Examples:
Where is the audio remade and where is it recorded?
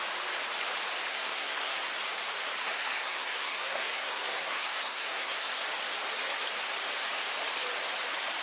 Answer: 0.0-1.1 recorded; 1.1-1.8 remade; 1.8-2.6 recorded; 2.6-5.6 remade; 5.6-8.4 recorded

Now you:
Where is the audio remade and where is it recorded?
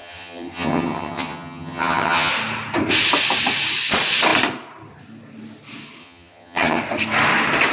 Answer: 0.0-2.3 remade; 2.3-6.0 recorded; 6.0-6.8 remade; 6.8-7.7 recorded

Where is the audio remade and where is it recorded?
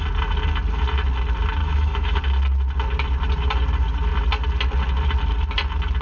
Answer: 0.0-1.6 recorded; 1.6-2.2 remade; 2.2-6.0 recorded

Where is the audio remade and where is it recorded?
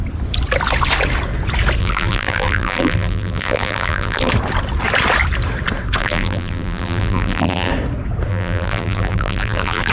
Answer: 0.0-1.8 recorded; 1.8-4.3 remade; 4.3-6.0 recorded; 6.0-7.7 remade; 7.7-8.3 recorded; 8.3-9.9 remade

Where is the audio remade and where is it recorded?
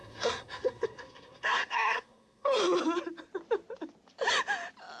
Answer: 0.0-2.6 remade; 2.6-5.0 recorded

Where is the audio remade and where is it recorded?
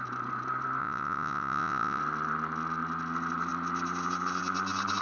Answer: 0.0-0.8 recorded; 0.8-2.0 remade; 2.0-5.0 recorded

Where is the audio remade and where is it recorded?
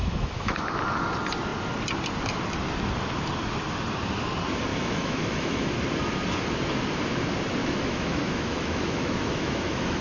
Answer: 0.0-0.6 remade; 0.6-4.7 recorded; 4.7-5.7 remade; 5.7-7.6 recorded; 7.6-10.0 remade